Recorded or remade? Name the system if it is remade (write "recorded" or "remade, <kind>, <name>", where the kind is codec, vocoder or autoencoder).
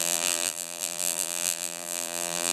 remade, vocoder, BigVGAN v2